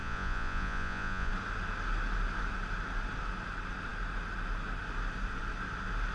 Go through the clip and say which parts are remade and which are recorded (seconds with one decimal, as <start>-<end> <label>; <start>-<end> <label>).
0.0-1.3 remade; 1.3-6.1 recorded